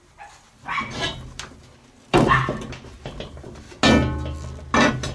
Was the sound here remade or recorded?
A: recorded